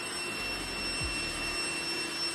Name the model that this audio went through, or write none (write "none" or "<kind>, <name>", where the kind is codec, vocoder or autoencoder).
none